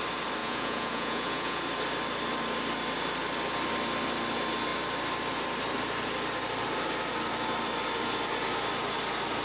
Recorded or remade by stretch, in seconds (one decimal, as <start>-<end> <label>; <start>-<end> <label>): 0.0-0.4 recorded; 0.4-1.6 remade; 1.6-9.4 recorded